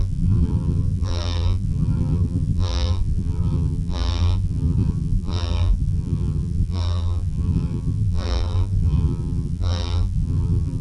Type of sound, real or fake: fake